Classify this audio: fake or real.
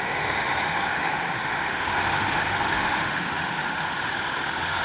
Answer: fake